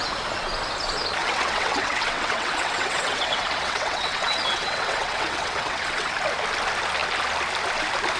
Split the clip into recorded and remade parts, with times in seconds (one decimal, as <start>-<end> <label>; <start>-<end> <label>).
0.0-1.2 recorded; 1.2-6.1 remade; 6.1-8.2 recorded